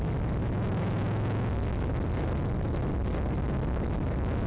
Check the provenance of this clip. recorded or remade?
recorded